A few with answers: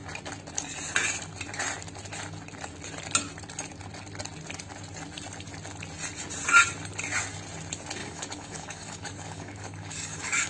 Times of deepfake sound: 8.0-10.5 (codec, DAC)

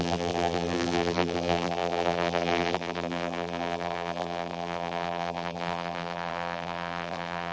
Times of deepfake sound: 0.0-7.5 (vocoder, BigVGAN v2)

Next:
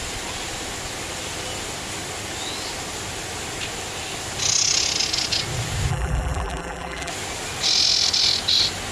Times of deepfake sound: 5.9-7.1 (vocoder, BigVGAN v2)